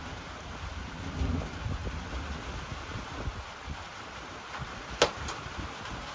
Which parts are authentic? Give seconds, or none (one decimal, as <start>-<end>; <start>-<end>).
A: 0.0-6.1